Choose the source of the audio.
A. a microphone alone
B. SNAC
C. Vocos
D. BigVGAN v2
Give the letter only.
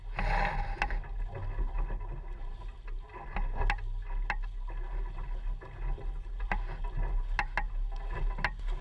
A